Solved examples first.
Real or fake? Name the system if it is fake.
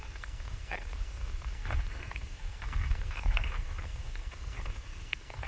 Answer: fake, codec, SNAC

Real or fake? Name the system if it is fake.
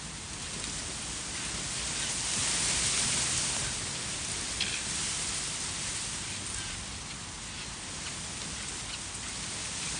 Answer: real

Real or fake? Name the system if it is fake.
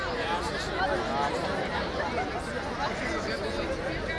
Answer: real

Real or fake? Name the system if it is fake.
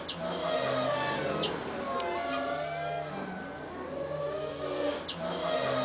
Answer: real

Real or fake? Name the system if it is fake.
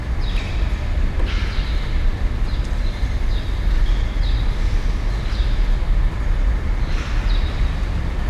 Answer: fake, vocoder, BigVGAN v2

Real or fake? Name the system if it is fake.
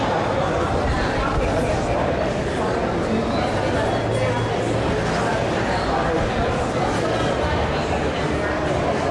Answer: real